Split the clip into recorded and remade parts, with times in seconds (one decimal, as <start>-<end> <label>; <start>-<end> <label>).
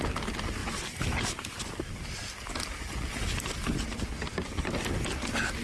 0.0-5.6 recorded